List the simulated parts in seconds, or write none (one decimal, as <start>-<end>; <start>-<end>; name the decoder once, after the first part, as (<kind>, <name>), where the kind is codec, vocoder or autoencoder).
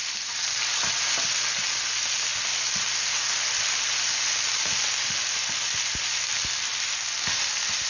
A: none